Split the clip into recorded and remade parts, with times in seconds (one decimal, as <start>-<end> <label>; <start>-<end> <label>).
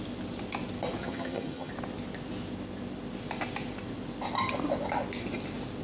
0.0-1.0 recorded; 1.0-1.7 remade; 1.7-5.8 recorded